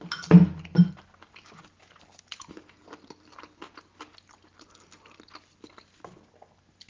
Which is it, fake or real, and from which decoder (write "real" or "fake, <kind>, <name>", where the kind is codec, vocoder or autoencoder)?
real